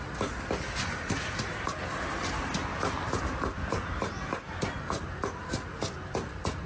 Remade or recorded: recorded